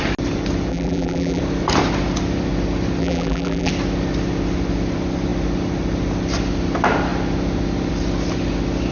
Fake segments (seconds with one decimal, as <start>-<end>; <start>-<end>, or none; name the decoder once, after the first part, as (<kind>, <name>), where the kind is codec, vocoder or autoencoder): 0.7-1.4 (vocoder, BigVGAN v2); 3.0-3.7